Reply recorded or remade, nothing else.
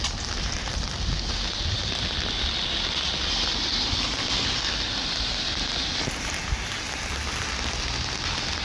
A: recorded